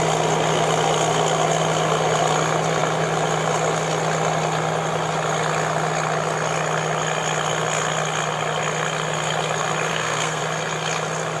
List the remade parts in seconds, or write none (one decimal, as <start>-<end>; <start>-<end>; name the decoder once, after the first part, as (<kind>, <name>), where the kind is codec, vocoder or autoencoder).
9.9-10.4 (codec, SNAC)